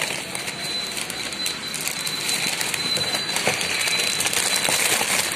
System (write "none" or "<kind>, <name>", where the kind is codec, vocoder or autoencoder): vocoder, BigVGAN v2